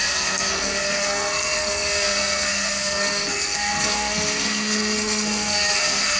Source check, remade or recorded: remade